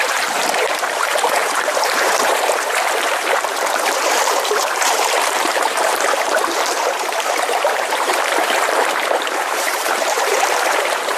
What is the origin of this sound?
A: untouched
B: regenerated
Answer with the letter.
B